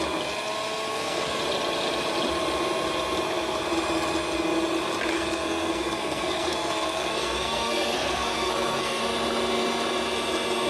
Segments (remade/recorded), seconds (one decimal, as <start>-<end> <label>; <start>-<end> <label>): 0.0-0.9 recorded; 0.9-1.4 remade; 1.4-5.1 recorded; 5.1-9.0 remade; 9.0-10.7 recorded